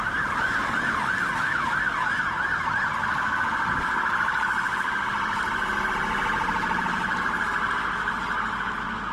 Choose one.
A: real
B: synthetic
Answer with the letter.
A